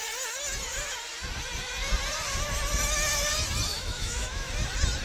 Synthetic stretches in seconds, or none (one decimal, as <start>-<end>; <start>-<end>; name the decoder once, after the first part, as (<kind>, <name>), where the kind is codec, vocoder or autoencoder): 3.7-4.5 (autoencoder, DAC-VAE)

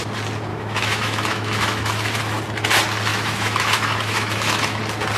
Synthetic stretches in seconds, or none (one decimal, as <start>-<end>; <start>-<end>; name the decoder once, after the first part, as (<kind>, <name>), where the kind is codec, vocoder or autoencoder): 0.5-2.2 (autoencoder, DAC-VAE); 3.1-4.8

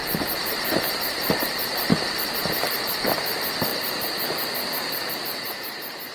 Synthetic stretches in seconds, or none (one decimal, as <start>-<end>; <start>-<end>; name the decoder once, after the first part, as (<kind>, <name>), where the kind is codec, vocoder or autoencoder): none

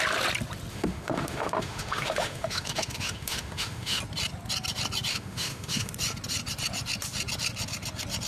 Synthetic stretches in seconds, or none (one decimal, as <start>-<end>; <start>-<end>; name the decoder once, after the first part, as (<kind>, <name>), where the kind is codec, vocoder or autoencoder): 0.7-4.0 (autoencoder, DAC-VAE); 5.1-5.9